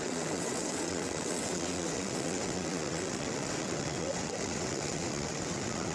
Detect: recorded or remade remade